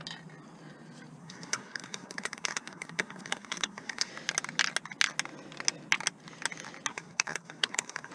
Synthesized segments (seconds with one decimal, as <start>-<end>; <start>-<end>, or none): 1.2-4.1; 6.9-8.1